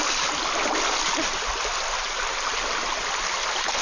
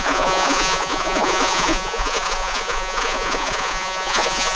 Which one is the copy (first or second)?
second